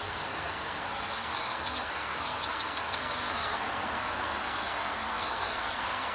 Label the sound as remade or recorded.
remade